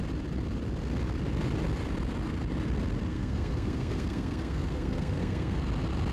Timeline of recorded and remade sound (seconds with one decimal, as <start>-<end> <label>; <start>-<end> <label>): 0.0-3.1 recorded; 3.1-5.6 remade; 5.6-6.1 recorded